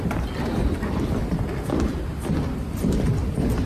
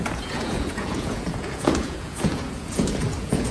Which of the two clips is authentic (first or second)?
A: first